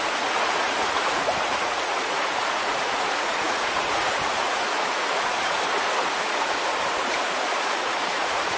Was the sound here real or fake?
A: fake